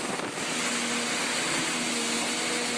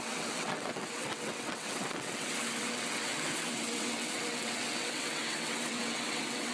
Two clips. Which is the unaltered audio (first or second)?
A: first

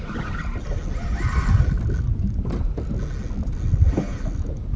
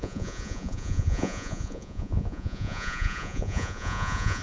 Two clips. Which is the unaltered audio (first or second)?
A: first